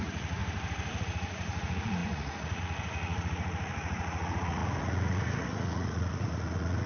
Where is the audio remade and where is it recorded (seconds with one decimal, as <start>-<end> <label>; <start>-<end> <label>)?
0.0-0.4 remade; 0.4-1.0 recorded; 1.0-6.9 remade